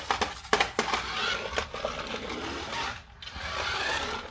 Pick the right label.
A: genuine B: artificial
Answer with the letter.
A